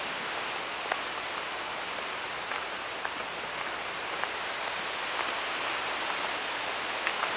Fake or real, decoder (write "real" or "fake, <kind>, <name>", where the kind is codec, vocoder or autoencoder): fake, vocoder, BigVGAN v2